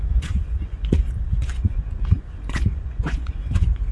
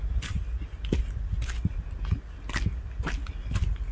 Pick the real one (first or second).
second